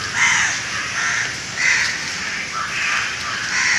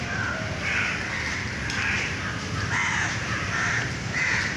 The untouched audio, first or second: first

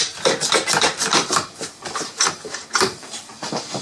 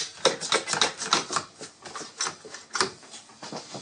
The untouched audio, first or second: second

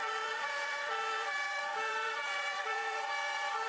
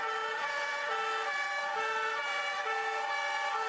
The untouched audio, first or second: second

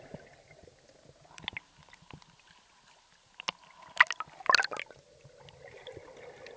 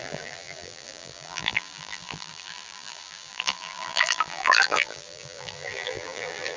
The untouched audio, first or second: first